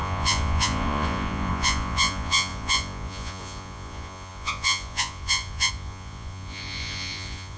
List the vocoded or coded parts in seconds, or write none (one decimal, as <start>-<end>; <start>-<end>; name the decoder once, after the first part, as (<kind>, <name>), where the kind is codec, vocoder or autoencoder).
0.0-7.6 (vocoder, Vocos)